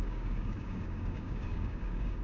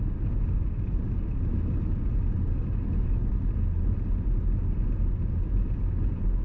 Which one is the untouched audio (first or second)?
second